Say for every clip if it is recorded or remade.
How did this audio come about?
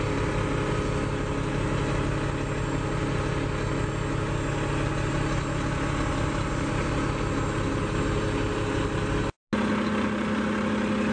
recorded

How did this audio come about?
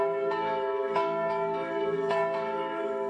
remade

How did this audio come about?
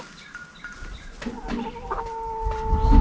recorded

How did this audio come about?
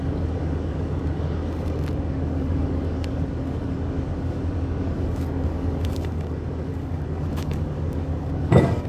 remade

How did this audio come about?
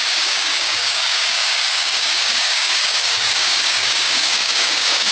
remade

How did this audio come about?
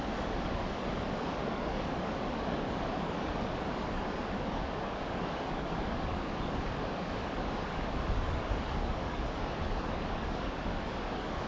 remade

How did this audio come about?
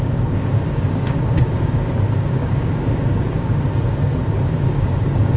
remade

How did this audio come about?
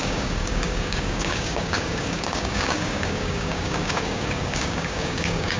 remade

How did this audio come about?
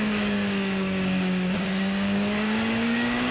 remade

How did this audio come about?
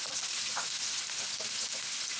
recorded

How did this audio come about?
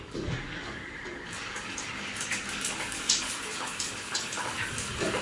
remade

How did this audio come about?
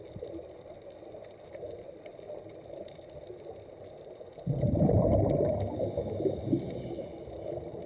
recorded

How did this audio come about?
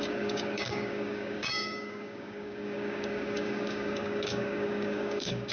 remade